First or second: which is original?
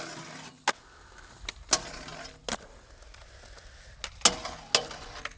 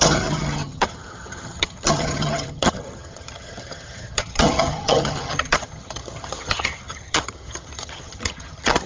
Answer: first